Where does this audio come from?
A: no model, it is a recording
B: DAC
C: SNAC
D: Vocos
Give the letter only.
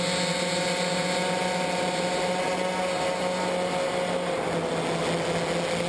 A